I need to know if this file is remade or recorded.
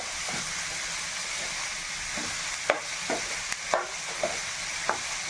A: recorded